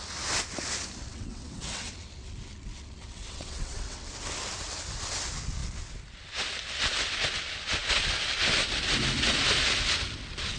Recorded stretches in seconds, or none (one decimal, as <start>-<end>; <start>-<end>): 0.0-1.1; 1.9-3.0; 4.1-10.6